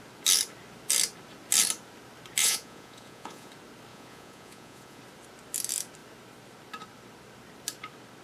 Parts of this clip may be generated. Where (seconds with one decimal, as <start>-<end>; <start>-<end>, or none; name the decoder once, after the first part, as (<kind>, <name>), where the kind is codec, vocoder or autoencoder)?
2.4-3.5 (vocoder, Vocos); 3.9-5.0